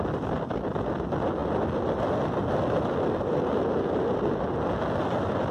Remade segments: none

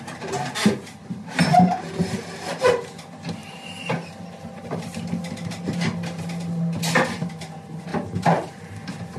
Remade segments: 3.4-4.8 (vocoder, BigVGAN v2); 7.9-8.5

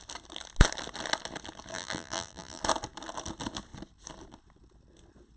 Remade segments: 1.7-2.6 (vocoder, BigVGAN v2)

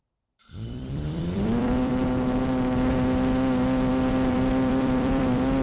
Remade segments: 0.0-1.9 (vocoder, BigVGAN v2); 4.1-5.6

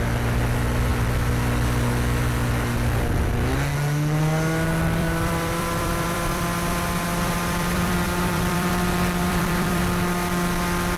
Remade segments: 5.0-8.7 (vocoder, BigVGAN v2); 9.2-9.8